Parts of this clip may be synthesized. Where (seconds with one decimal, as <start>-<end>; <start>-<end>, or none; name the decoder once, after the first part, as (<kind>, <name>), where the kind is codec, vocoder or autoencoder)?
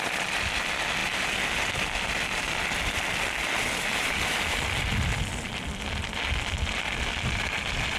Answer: none